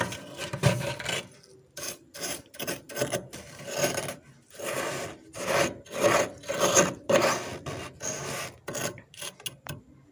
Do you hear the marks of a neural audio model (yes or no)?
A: no